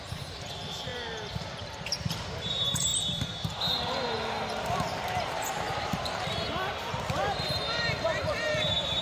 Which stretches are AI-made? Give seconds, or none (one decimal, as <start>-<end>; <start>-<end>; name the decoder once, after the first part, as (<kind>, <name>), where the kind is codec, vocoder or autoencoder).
0.0-0.9 (vocoder, BigVGAN v2); 1.6-2.9; 4.6-9.0